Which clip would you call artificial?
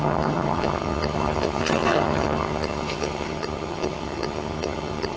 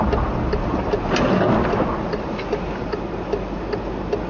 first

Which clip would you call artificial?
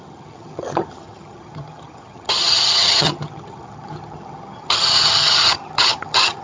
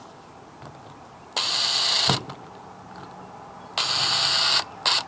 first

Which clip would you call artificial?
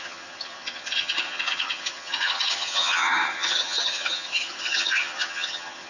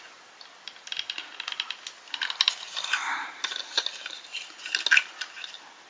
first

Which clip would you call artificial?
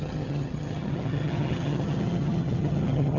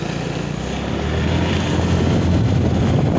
first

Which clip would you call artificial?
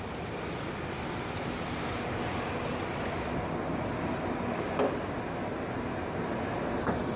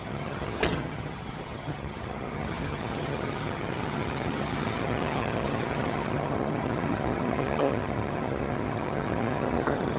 second